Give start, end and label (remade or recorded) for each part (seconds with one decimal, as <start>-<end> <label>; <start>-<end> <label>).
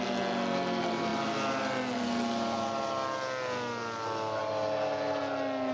0.0-5.7 recorded